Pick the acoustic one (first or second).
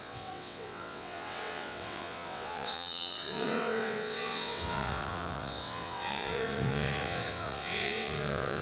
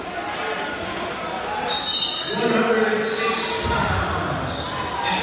second